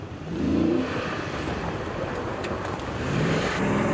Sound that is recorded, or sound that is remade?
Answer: remade